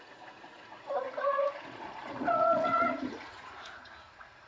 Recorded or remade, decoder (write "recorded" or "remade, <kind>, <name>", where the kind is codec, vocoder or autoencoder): remade, vocoder, Vocos